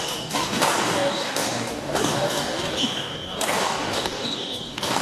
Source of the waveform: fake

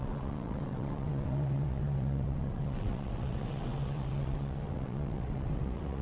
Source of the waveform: fake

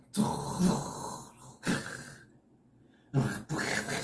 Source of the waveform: real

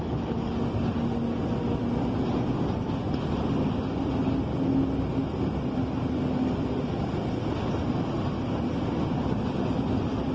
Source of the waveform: real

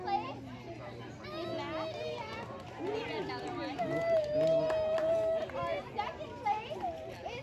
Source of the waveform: real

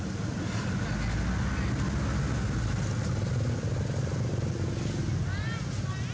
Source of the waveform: real